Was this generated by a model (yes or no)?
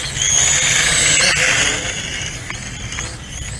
no